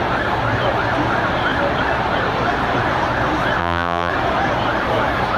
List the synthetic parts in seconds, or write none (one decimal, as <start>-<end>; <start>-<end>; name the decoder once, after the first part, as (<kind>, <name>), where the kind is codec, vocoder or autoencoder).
3.6-4.1 (vocoder, BigVGAN v2)